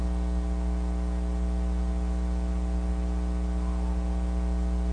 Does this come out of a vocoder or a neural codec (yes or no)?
no